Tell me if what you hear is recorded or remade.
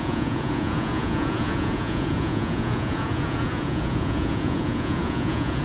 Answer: remade